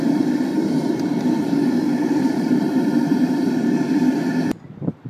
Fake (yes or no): yes